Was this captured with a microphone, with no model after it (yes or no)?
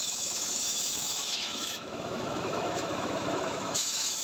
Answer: no